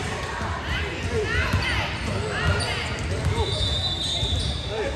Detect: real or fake real